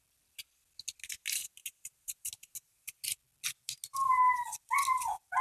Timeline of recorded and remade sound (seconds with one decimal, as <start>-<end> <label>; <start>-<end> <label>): 0.0-5.4 recorded